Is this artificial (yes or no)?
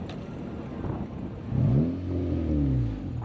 no